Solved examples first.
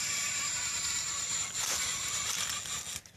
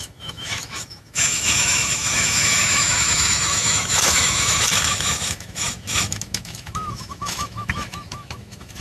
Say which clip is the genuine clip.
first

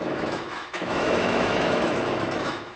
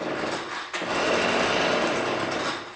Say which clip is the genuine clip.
second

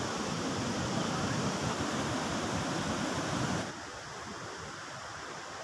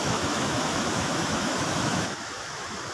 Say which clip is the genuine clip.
first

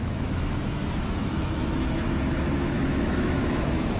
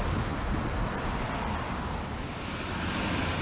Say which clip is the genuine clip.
second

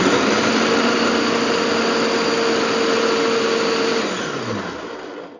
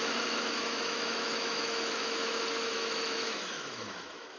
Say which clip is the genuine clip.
first